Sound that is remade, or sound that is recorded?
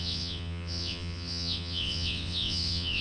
remade